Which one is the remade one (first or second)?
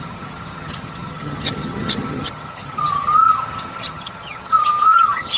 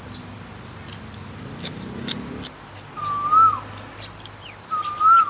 first